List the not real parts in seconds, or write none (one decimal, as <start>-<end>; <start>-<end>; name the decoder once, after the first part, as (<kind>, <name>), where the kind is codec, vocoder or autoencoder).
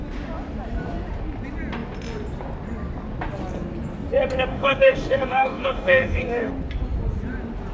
4.5-6.5 (codec, DAC)